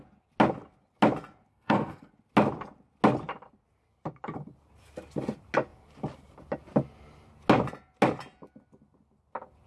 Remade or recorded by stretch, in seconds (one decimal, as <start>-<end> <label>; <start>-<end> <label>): 0.0-1.5 recorded; 1.5-2.1 remade; 2.1-9.7 recorded